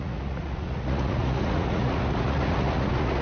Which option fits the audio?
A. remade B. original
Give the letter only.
A